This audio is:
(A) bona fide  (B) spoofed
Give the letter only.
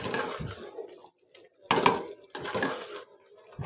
A